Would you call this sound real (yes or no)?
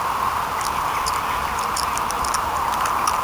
yes